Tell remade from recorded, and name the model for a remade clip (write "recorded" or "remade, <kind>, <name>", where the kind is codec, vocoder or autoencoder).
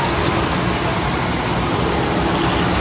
recorded